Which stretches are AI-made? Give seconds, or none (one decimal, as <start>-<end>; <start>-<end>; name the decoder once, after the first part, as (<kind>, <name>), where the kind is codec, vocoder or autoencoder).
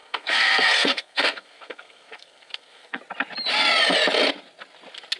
0.0-3.0 (codec, SNAC)